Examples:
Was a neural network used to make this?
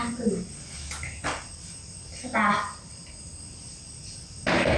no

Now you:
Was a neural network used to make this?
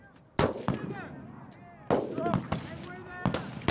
no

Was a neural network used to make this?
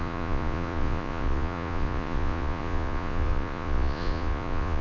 yes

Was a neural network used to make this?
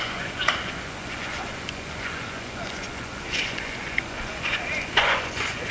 yes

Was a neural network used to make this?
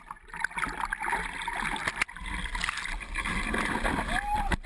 no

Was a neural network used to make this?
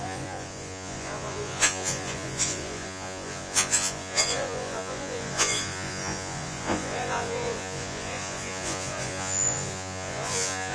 yes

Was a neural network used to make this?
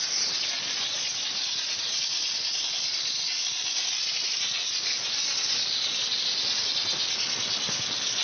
no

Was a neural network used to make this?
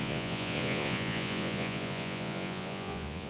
yes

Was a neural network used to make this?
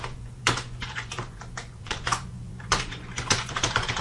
yes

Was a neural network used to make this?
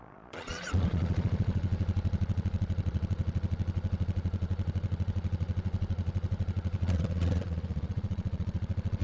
yes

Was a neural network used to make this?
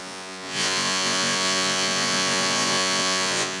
yes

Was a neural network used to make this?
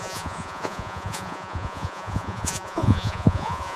yes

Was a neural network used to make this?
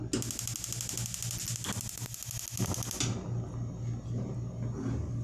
no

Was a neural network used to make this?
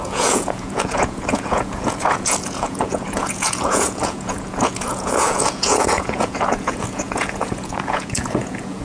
yes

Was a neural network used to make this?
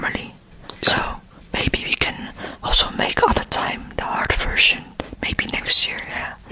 yes